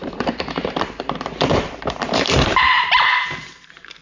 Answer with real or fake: fake